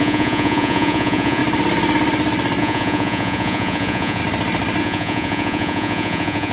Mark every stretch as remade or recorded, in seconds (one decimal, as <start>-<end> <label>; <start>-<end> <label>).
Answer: 0.0-1.4 remade; 1.4-2.6 recorded; 2.6-4.2 remade; 4.2-4.8 recorded; 4.8-6.5 remade